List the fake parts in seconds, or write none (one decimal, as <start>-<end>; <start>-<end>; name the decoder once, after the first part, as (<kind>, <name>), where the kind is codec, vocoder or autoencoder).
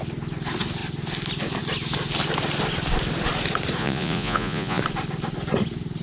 3.8-4.8 (vocoder, Vocos)